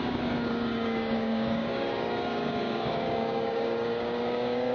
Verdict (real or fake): fake